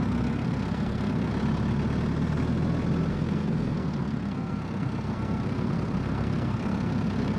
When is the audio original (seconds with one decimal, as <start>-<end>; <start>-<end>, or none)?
1.3-3.1